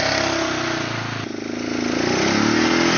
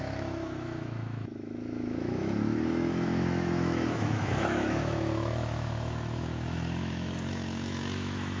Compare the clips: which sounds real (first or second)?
first